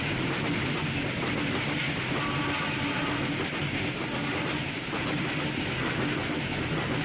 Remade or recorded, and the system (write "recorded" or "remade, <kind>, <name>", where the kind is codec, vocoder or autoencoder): recorded